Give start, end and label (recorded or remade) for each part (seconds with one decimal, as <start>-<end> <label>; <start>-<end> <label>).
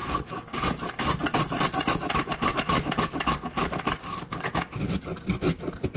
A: 0.0-1.6 remade; 1.6-2.5 recorded; 2.5-4.5 remade; 4.5-6.0 recorded